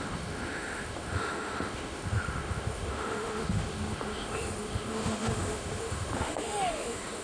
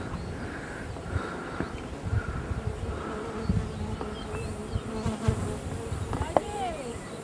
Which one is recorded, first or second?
second